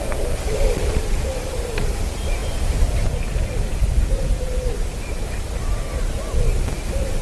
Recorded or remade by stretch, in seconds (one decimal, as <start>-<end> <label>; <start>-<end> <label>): 0.0-7.2 remade